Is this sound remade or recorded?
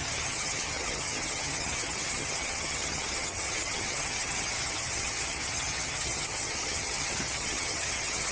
remade